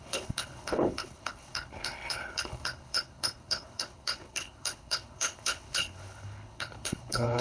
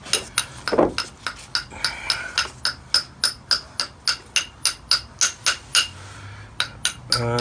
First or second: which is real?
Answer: second